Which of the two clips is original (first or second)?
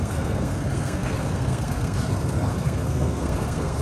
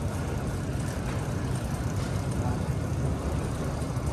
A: second